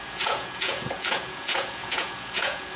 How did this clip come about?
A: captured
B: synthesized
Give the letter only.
B